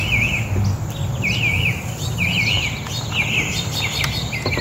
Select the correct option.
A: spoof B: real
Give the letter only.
B